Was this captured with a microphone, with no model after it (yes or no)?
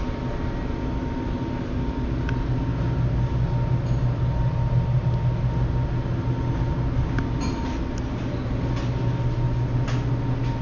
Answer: yes